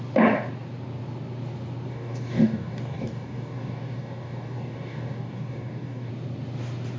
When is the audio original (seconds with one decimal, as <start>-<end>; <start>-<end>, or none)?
0.0-1.9; 6.1-7.0